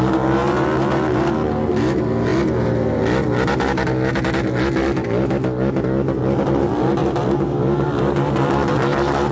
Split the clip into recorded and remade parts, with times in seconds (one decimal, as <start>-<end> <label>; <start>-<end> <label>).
0.0-9.3 recorded